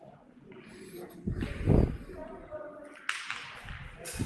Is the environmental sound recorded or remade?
recorded